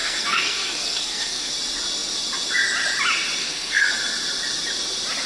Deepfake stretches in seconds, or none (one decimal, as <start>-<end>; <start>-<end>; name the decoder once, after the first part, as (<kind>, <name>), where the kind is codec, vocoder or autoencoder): 0.0-1.5 (codec, SNAC); 3.4-3.9